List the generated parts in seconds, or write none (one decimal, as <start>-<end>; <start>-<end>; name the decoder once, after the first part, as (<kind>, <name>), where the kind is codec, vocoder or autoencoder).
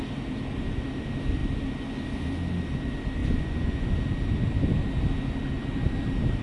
3.2-3.9 (vocoder, Vocos)